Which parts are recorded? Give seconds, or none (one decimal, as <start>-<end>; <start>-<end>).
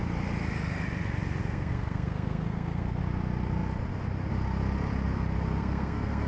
0.0-1.4; 3.0-5.6